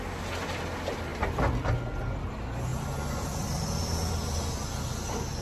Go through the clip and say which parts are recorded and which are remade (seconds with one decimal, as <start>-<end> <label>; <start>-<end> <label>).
0.0-2.7 recorded; 2.7-4.1 remade; 4.1-5.4 recorded